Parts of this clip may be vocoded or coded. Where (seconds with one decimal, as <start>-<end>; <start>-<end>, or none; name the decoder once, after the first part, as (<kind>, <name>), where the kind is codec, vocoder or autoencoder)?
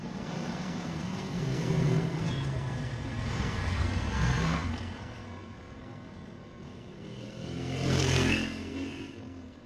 0.0-9.7 (codec, SNAC)